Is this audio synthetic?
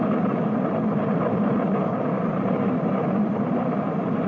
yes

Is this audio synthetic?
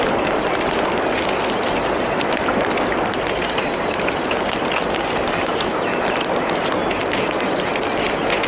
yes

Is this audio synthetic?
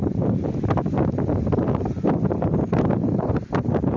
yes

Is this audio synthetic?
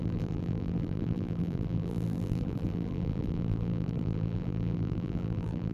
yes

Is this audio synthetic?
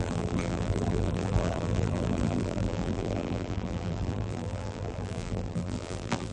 yes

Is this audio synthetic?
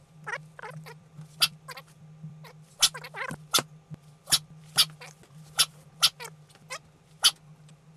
no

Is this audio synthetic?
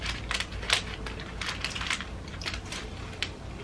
no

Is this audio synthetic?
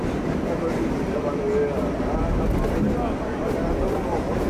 no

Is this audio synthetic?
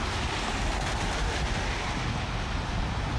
no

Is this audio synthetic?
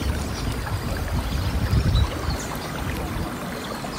no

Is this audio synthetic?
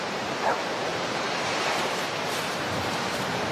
yes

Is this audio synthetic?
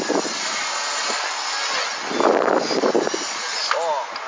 no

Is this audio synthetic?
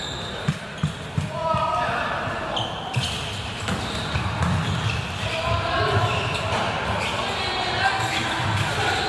no